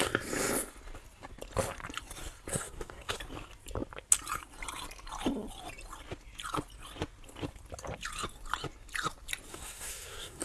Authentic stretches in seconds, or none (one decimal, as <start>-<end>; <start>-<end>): 0.0-2.5; 3.2-9.5